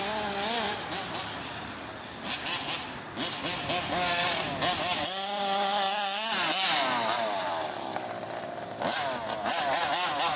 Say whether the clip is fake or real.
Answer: real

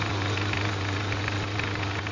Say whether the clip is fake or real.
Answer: real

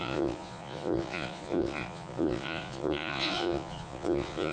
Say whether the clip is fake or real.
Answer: fake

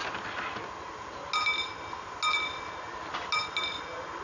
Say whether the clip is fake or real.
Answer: real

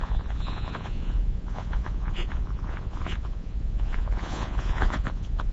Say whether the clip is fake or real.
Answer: fake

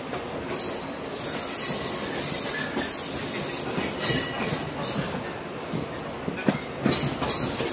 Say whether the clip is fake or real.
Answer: real